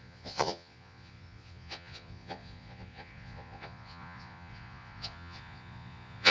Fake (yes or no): yes